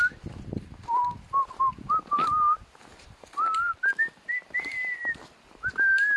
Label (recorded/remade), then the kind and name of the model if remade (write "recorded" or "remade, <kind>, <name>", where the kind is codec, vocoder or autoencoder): recorded